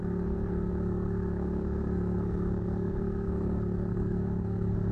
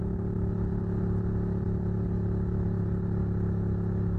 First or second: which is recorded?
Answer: second